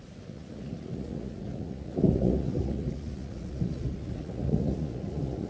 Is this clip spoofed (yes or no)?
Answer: yes